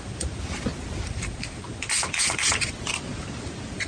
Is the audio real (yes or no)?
yes